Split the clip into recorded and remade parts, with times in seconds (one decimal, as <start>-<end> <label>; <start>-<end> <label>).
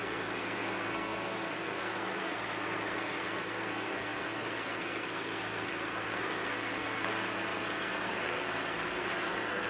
0.0-9.7 remade